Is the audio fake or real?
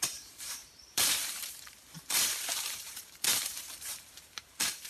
fake